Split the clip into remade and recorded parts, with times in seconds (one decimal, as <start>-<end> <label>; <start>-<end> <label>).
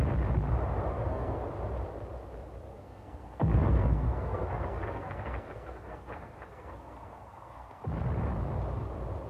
0.0-0.9 recorded; 0.9-1.4 remade; 1.4-2.7 recorded; 2.7-7.8 remade; 7.8-9.3 recorded